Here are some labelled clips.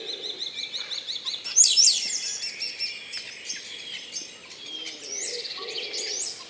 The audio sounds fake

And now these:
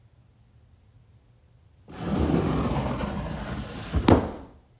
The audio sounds real